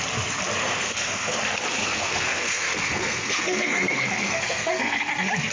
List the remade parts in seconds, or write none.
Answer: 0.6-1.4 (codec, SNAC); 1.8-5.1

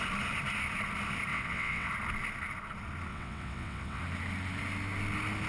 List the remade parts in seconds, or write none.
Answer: 1.3-1.9 (vocoder, WaveNeXt); 3.1-4.0

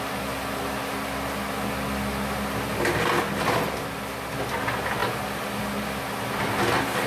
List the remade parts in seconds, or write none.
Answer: none

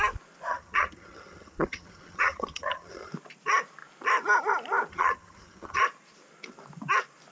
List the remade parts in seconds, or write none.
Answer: 0.5-3.1 (vocoder, HiFi-GAN); 4.9-5.8

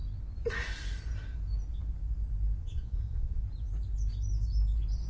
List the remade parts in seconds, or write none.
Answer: 2.6-3.4 (vocoder, Vocos)